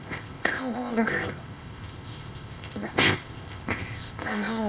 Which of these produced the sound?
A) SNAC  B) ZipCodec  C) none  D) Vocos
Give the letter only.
B